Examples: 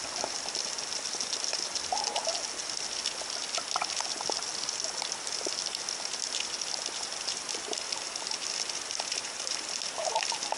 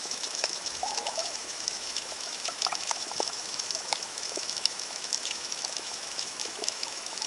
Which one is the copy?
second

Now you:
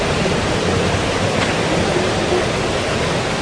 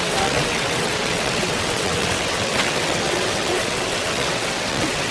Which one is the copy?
second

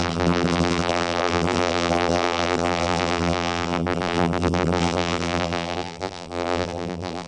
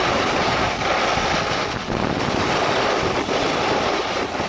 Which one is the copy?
first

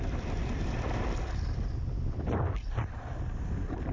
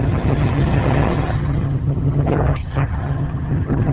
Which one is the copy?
second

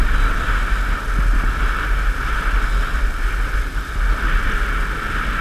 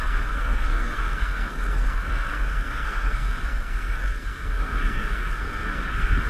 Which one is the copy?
second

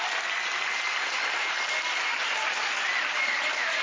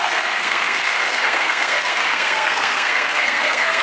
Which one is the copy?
second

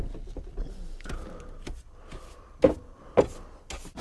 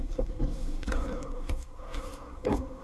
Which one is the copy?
second